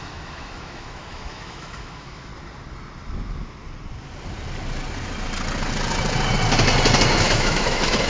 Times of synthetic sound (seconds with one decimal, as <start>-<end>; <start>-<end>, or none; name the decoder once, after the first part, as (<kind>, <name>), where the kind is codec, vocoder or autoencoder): 0.0-2.3 (autoencoder, DAC-VAE); 7.2-8.1